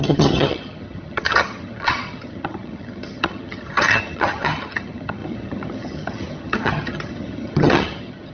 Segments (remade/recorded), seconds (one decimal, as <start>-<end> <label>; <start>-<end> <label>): 0.0-8.3 remade